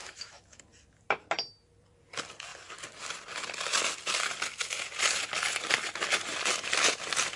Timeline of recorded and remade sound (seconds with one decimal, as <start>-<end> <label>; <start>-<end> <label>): 0.0-0.6 remade; 0.6-7.4 recorded